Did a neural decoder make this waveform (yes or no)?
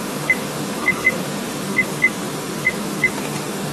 yes